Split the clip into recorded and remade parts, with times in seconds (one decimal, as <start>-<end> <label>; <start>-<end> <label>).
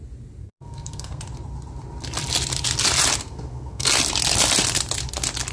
0.0-0.4 recorded; 0.4-1.2 remade; 1.2-3.2 recorded; 3.2-3.9 remade; 3.9-5.5 recorded